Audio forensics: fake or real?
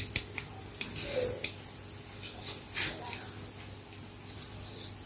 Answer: real